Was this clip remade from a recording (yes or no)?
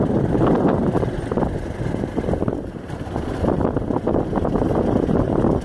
no